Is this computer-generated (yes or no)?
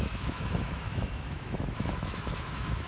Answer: yes